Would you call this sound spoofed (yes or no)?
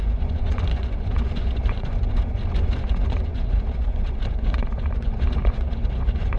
yes